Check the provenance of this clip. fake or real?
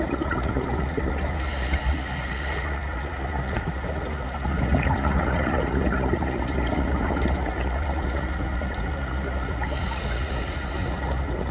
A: fake